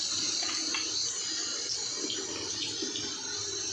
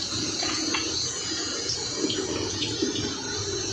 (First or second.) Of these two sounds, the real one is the first